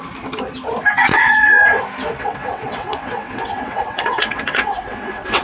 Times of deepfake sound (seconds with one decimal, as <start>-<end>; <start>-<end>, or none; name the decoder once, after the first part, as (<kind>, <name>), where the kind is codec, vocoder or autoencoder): 1.1-1.8 (vocoder, WaveNeXt); 2.2-5.4